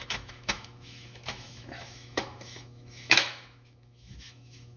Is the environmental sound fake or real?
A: fake